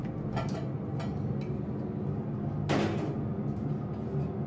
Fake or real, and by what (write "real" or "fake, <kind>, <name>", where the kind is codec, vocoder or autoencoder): real